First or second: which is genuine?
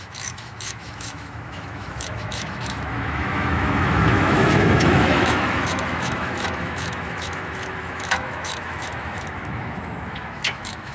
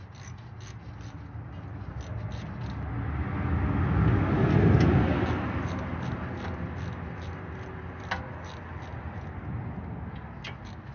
second